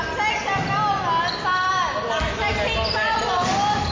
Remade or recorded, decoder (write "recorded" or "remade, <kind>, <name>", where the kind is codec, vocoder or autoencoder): recorded